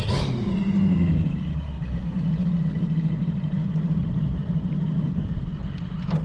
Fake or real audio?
fake